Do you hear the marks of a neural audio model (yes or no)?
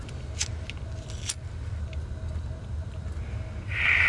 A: no